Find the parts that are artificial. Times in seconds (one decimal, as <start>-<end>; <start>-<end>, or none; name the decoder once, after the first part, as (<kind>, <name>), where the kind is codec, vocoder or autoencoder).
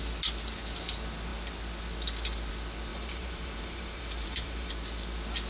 2.9-4.7 (vocoder, BigVGAN v2)